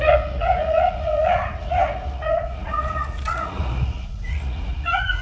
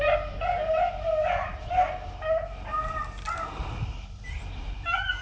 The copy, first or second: first